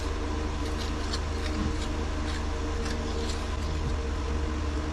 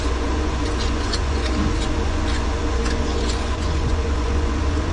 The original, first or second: first